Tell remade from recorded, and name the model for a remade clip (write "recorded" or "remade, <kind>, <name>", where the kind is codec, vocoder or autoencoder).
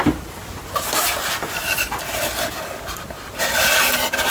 recorded